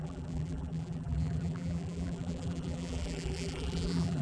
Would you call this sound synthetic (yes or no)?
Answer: yes